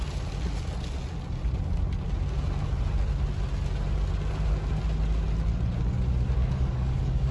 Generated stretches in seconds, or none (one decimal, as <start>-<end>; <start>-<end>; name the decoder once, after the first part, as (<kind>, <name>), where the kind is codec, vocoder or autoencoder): 6.4-7.3 (codec, DAC)